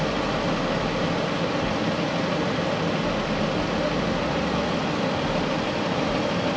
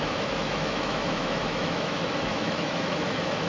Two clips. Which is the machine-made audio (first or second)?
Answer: second